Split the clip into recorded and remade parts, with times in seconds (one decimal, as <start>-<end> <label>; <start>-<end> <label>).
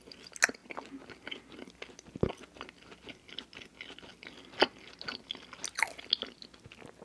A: 0.0-7.0 recorded